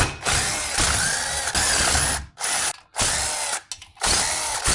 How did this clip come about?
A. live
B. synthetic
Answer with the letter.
A